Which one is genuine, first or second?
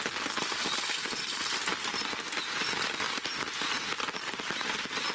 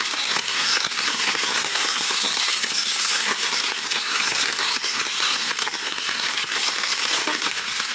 first